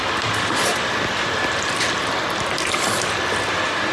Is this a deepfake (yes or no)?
no